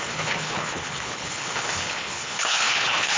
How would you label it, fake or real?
fake